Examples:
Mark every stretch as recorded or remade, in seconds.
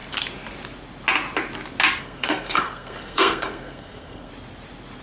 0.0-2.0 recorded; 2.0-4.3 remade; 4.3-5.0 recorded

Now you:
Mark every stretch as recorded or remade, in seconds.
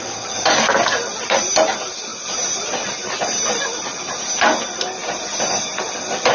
0.0-6.3 recorded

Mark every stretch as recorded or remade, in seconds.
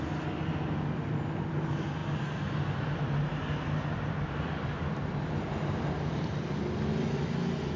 0.0-7.8 recorded